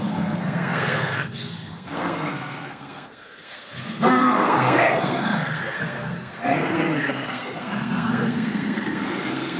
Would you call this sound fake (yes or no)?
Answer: yes